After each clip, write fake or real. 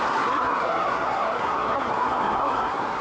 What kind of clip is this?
fake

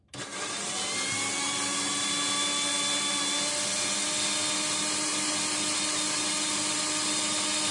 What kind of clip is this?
real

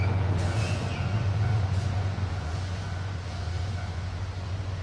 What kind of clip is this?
fake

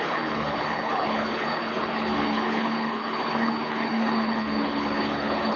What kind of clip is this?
fake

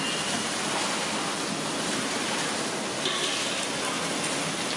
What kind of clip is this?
real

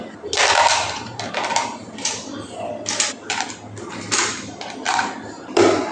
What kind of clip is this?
real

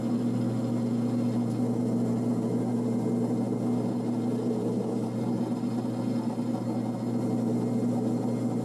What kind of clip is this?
real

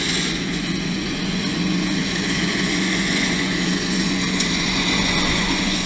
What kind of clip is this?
fake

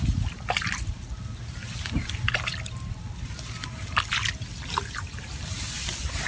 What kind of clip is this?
real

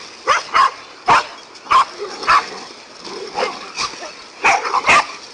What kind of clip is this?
real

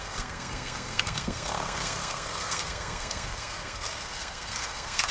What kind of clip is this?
fake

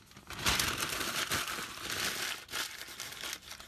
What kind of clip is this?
real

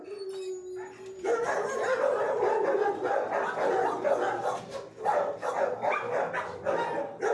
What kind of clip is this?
real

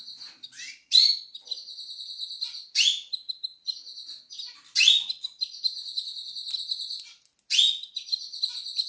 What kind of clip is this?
real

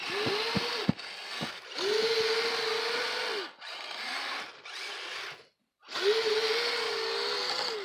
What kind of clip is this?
real